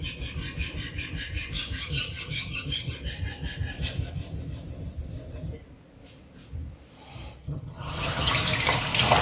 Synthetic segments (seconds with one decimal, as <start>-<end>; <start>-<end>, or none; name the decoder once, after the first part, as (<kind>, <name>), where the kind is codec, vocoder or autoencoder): 1.8-2.9 (vocoder, HiFi-GAN); 7.4-8.3